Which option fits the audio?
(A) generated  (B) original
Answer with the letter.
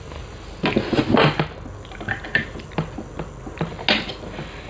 B